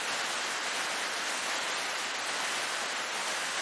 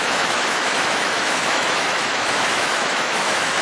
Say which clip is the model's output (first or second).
second